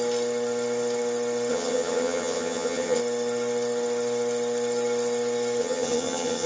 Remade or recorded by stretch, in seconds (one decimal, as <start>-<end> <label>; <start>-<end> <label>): 0.0-1.5 recorded; 1.5-3.0 remade; 3.0-5.6 recorded; 5.6-6.5 remade